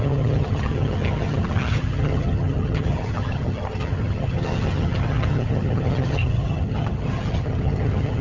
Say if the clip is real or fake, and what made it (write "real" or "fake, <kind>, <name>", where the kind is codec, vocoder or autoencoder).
fake, vocoder, HiFi-GAN